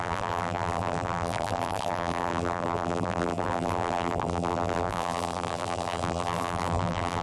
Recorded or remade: remade